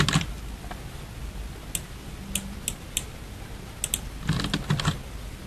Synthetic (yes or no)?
no